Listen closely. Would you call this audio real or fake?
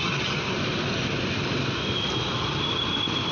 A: real